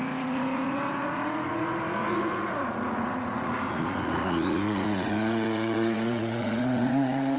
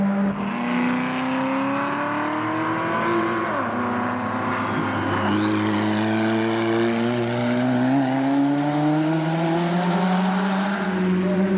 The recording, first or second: second